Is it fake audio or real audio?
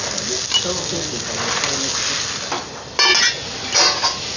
real